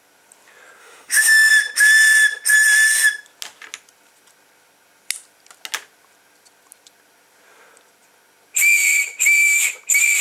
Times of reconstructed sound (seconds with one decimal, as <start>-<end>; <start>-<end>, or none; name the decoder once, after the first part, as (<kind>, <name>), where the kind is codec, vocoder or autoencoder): 0.8-1.5 (autoencoder, DAC-VAE)